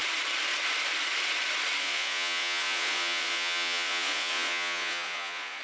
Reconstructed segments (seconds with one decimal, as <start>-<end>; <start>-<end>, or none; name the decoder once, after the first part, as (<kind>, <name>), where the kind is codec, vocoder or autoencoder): 1.8-5.6 (vocoder, Vocos)